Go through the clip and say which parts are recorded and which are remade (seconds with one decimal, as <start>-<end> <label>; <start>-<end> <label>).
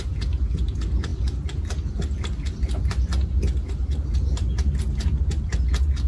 0.0-6.1 recorded